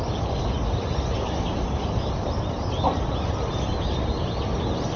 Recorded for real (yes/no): yes